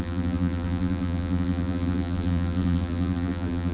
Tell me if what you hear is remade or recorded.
remade